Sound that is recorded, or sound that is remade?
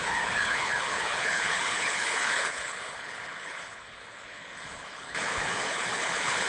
remade